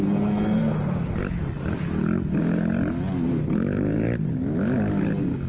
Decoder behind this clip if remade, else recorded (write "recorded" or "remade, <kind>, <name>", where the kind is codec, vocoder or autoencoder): recorded